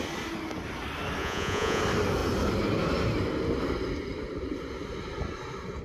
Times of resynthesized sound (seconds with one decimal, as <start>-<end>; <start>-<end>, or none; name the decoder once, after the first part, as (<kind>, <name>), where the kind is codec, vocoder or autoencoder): 1.2-1.8 (vocoder, Vocos)